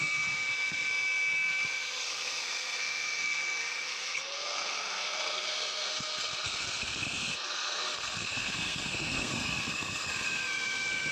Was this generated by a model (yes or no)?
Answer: yes